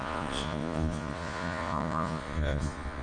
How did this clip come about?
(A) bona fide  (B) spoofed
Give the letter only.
B